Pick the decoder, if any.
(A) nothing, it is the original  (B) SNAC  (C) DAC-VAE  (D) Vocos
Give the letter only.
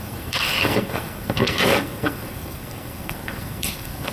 B